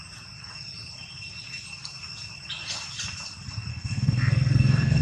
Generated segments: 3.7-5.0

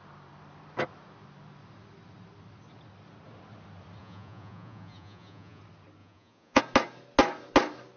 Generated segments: 4.0-5.6; 6.0-6.6

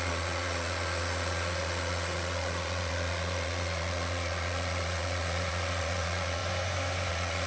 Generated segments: 0.0-6.4; 7.1-7.5

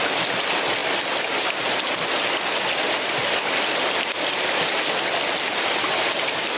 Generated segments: none

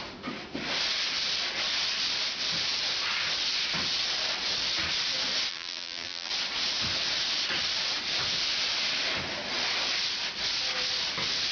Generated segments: 5.5-6.3

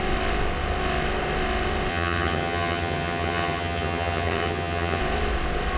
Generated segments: 1.9-5.0

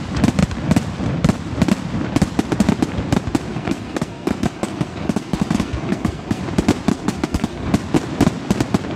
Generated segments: 3.5-6.4; 6.9-7.7

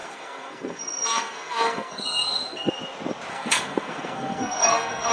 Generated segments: 0.0-2.7; 3.3-5.1